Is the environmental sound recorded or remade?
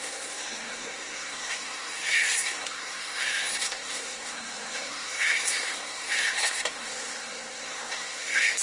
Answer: remade